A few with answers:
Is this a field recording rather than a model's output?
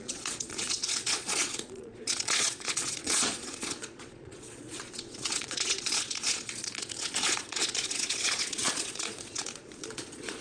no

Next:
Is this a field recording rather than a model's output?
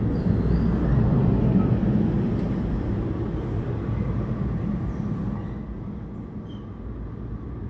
yes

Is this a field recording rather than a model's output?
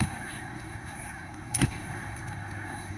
no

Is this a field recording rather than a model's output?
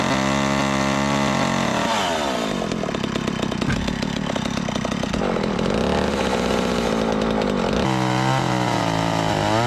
yes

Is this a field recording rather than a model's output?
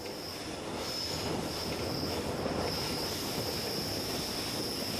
yes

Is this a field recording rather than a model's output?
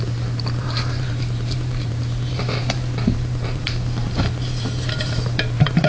no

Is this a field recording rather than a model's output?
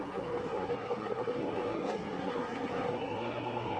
no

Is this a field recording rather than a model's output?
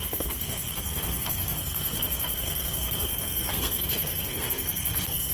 no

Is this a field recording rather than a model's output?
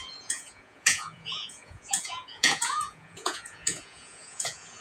no